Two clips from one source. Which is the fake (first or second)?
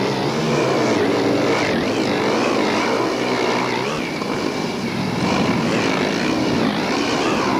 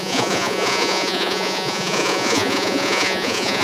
second